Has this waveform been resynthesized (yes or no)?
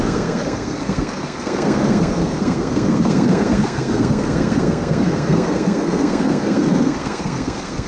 yes